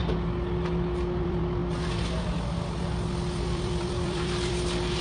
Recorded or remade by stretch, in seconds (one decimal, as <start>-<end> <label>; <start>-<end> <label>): 0.0-1.2 recorded; 1.2-1.6 remade; 1.6-3.5 recorded; 3.5-5.0 remade